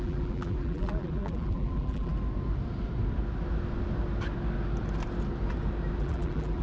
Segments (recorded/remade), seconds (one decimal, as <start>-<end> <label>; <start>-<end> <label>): 0.0-2.1 remade; 2.1-6.0 recorded; 6.0-6.6 remade